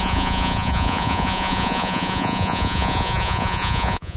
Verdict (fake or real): fake